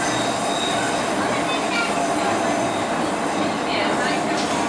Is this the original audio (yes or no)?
yes